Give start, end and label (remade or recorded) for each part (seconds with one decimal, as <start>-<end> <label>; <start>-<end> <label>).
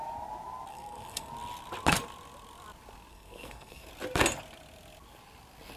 0.0-0.7 recorded; 0.7-1.3 remade; 1.3-3.1 recorded; 3.1-3.9 remade; 3.9-5.8 recorded